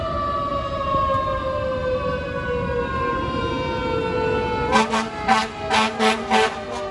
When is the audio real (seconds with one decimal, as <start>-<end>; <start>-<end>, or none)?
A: 0.0-0.5; 1.4-1.8; 3.4-6.9